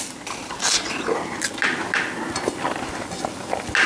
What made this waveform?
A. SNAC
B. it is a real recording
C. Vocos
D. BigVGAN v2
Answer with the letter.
B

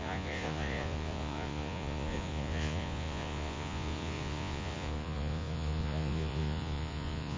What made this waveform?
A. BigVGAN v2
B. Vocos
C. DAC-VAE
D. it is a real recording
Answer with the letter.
B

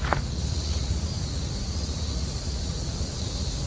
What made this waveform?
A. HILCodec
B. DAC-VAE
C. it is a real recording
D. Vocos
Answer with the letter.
D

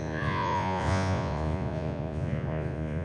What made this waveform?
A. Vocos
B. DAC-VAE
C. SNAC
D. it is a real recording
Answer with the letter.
A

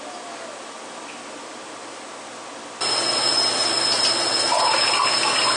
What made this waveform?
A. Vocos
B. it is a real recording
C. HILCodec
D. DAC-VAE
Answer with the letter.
B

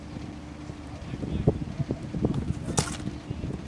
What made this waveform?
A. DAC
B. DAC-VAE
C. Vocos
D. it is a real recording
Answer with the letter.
D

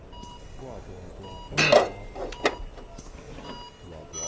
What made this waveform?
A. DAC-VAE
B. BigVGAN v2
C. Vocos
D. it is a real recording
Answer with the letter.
D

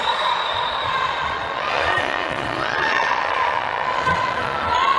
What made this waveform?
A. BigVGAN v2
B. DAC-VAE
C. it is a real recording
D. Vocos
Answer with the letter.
D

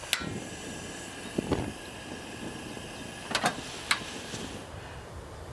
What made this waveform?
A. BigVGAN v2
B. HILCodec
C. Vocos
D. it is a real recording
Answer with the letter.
D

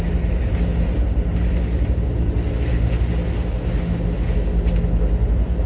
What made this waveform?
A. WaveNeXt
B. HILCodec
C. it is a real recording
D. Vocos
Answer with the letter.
C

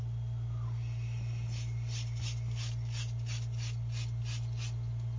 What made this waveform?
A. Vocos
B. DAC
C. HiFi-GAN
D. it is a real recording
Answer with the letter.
D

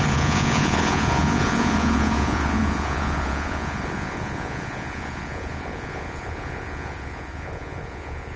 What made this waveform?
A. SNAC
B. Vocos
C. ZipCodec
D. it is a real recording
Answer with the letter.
B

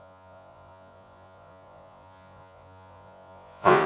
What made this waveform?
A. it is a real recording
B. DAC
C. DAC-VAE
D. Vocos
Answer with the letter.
D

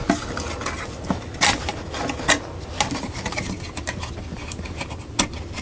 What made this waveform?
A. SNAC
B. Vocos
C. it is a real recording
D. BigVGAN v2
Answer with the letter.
C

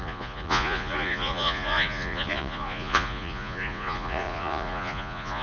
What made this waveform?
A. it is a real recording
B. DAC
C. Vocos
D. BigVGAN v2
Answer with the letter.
C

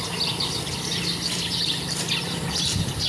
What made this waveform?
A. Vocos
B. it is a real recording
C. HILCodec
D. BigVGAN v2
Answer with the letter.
B